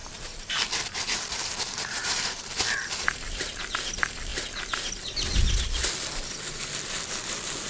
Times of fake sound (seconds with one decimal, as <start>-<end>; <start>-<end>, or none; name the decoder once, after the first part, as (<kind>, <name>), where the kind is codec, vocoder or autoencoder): 0.0-3.6 (vocoder, BigVGAN v2)